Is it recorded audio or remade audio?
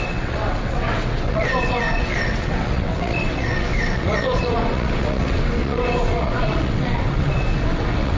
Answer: remade